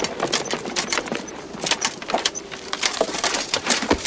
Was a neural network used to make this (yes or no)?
no